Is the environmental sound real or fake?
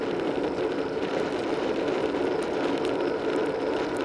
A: real